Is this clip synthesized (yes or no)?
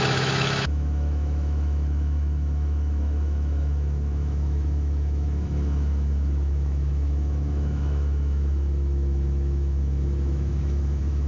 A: yes